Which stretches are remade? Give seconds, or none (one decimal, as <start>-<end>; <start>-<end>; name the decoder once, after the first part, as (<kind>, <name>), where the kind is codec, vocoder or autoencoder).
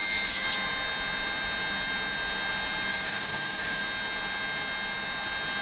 2.9-3.8 (codec, DAC)